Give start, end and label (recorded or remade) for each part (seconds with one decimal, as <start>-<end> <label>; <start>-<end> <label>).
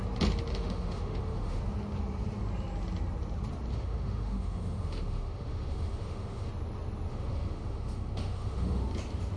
0.0-0.5 recorded; 0.5-1.6 remade; 1.6-3.7 recorded; 3.7-6.5 remade; 6.5-7.1 recorded; 7.1-8.9 remade; 8.9-9.4 recorded